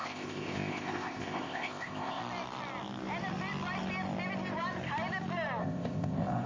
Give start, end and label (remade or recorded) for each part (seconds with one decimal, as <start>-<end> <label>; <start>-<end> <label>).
0.0-2.2 remade; 2.2-5.6 recorded; 5.6-6.5 remade